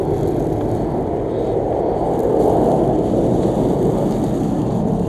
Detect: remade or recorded recorded